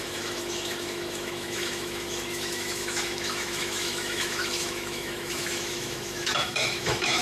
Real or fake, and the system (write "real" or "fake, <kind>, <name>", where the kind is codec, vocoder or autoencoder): fake, autoencoder, DAC-VAE